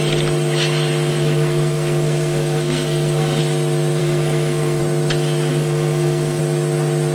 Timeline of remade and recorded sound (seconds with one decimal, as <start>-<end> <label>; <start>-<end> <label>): 0.0-1.1 recorded; 1.1-3.4 remade; 3.4-4.0 recorded; 4.0-4.8 remade; 4.8-5.5 recorded; 5.5-6.4 remade; 6.4-7.1 recorded